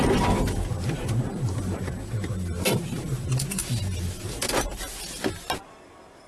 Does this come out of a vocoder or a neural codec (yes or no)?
no